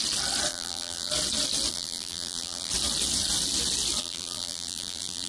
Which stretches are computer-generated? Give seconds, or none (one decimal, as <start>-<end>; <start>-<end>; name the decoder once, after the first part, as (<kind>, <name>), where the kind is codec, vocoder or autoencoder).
0.5-1.1 (vocoder, BigVGAN v2); 1.7-2.7; 4.0-5.3